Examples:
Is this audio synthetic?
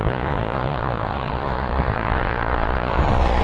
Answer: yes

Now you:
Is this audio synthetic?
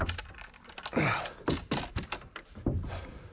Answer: no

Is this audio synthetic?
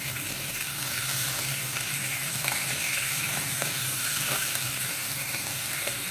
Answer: yes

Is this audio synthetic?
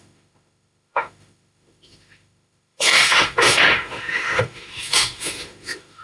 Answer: yes